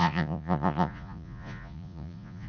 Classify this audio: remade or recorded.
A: remade